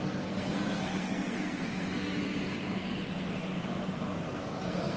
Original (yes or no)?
no